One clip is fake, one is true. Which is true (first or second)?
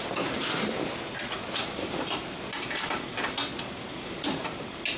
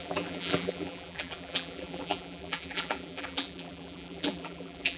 first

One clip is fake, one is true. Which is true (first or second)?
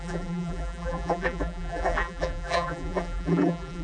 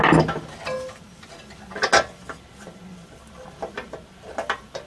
second